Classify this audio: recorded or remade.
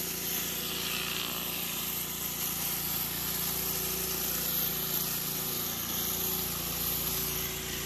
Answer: recorded